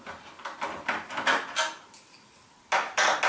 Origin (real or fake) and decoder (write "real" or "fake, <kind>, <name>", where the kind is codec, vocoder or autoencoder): real